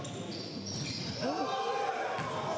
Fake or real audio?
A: real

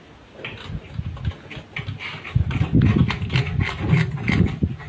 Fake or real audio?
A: real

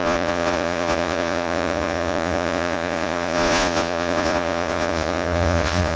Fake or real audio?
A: fake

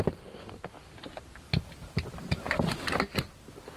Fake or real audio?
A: real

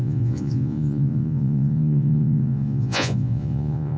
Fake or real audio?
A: fake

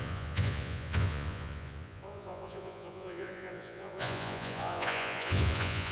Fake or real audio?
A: fake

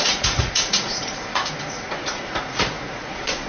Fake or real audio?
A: fake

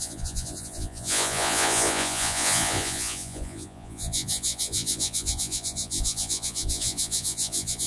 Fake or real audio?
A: fake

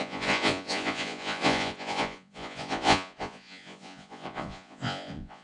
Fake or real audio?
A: fake